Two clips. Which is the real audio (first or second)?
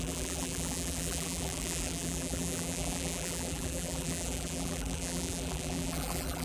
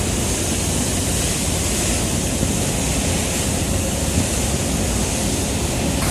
second